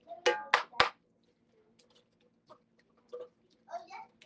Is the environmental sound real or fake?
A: real